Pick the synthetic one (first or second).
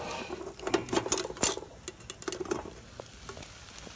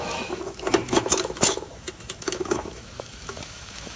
second